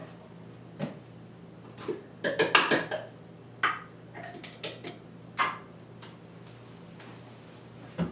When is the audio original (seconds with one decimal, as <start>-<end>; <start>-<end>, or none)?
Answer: 0.0-8.1